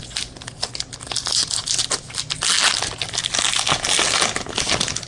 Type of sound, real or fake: real